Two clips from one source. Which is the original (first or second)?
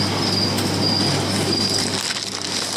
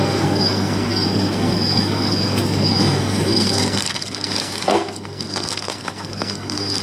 first